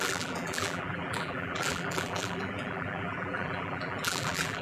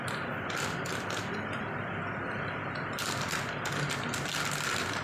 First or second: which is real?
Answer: second